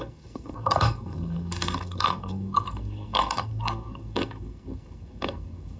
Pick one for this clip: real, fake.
fake